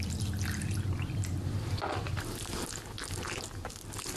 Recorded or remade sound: recorded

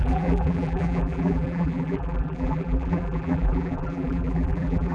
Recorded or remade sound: remade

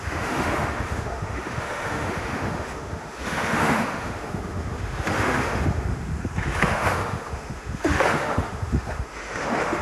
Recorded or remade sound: remade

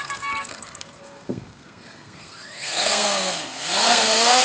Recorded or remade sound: remade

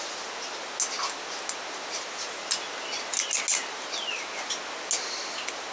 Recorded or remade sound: recorded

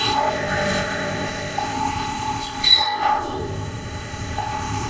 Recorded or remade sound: remade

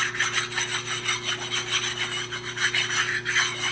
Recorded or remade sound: recorded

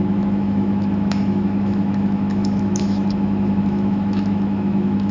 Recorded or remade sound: remade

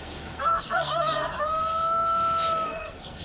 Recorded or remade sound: remade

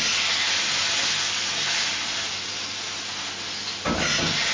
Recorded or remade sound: recorded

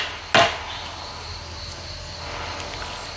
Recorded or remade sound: recorded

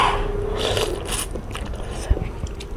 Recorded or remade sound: recorded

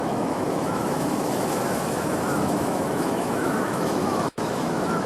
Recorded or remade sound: remade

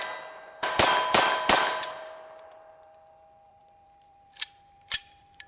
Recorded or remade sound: remade